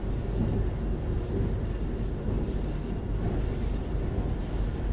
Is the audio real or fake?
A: real